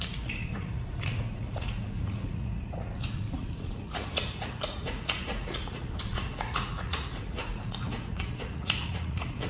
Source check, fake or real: fake